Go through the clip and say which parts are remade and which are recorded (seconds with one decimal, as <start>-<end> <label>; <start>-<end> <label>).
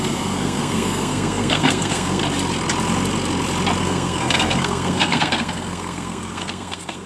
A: 0.0-2.2 remade; 2.2-3.8 recorded; 3.8-7.1 remade